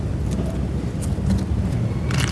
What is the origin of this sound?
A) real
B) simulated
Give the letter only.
A